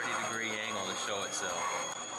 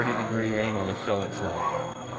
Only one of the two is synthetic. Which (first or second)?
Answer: second